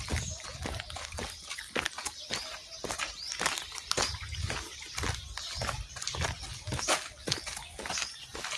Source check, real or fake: real